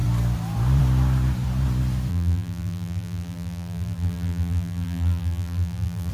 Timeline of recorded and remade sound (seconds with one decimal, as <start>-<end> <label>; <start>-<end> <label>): 0.0-2.1 recorded; 2.1-6.1 remade